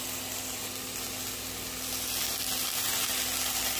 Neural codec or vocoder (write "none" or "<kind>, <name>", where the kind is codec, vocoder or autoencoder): none